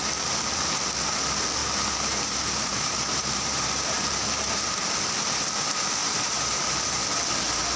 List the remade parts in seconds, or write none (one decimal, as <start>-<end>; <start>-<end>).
1.6-4.9; 6.0-6.9